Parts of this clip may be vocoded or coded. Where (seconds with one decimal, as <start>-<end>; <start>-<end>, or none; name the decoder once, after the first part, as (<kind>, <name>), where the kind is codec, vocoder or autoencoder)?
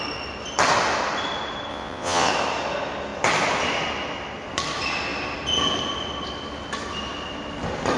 1.7-2.3 (vocoder, WaveNeXt)